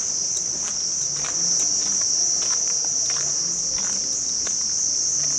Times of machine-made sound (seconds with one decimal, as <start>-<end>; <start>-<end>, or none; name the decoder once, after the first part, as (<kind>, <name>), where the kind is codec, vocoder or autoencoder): none